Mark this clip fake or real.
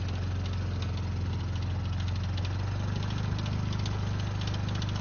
real